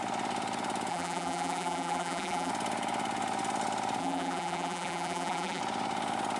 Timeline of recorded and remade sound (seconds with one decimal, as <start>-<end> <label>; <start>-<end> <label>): 0.0-0.9 recorded; 0.9-2.5 remade; 2.5-4.0 recorded; 4.0-5.6 remade; 5.6-6.4 recorded